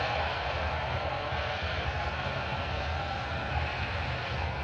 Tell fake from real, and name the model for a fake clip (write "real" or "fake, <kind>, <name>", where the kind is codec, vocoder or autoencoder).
fake, codec, SNAC